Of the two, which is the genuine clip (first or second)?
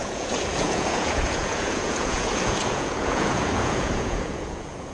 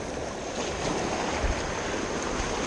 second